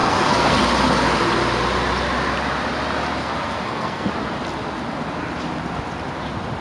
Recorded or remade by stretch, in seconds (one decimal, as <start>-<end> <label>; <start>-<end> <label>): 0.0-0.6 remade; 0.6-3.2 recorded; 3.2-4.1 remade; 4.1-6.6 recorded